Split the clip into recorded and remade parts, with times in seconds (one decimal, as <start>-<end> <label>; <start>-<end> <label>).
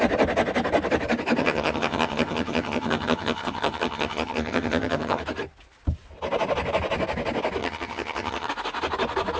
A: 0.0-1.4 recorded; 1.4-5.2 remade; 5.2-7.6 recorded; 7.6-8.5 remade; 8.5-9.4 recorded